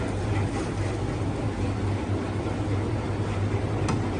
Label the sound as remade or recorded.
recorded